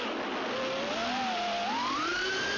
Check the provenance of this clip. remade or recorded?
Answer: recorded